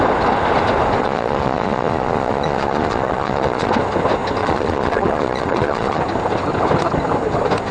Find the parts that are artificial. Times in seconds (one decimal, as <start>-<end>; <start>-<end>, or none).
1.0-3.7; 4.4-6.0